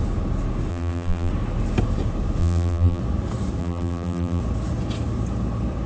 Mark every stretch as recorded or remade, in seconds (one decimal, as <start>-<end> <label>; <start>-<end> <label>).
0.0-0.7 recorded; 0.7-1.3 remade; 1.3-2.4 recorded; 2.4-3.0 remade; 3.0-3.6 recorded; 3.6-4.4 remade; 4.4-5.9 recorded

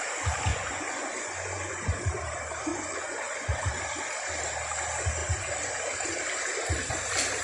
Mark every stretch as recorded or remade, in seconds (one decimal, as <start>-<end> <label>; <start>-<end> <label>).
0.0-0.5 recorded; 0.5-2.0 remade; 2.0-2.7 recorded; 2.7-3.6 remade; 3.6-7.4 recorded

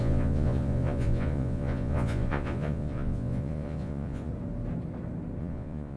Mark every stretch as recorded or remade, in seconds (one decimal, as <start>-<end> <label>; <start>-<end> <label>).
0.0-4.3 remade; 4.3-5.4 recorded; 5.4-6.0 remade